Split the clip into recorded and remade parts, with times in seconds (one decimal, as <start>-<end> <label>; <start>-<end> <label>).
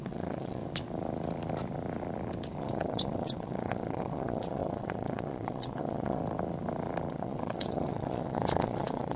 0.0-0.6 remade; 0.6-2.6 recorded; 2.6-6.2 remade; 6.2-7.1 recorded; 7.1-9.2 remade